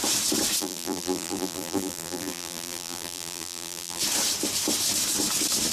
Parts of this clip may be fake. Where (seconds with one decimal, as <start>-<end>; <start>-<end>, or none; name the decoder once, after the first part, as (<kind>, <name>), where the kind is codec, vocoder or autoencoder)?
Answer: 0.6-4.0 (vocoder, BigVGAN v2)